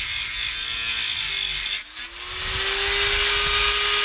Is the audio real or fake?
real